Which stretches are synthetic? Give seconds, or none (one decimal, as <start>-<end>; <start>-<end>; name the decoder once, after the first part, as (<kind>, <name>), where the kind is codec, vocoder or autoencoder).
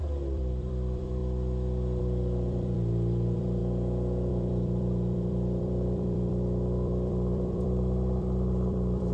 0.0-1.2 (vocoder, BigVGAN v2); 2.0-3.6; 4.3-9.1